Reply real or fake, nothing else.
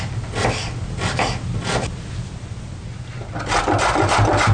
real